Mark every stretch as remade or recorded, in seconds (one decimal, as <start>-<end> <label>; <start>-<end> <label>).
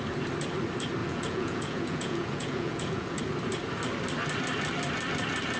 0.0-1.0 recorded; 1.0-3.2 remade; 3.2-5.6 recorded